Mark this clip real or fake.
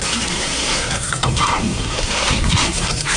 fake